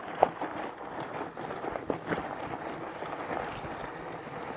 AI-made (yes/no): no